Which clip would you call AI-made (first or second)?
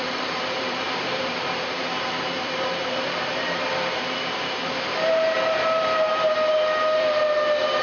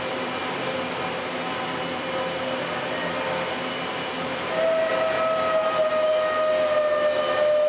first